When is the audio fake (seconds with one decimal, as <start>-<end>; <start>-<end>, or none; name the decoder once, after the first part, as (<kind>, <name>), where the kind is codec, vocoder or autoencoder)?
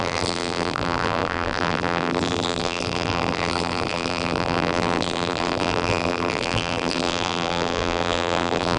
0.0-8.8 (vocoder, BigVGAN v2)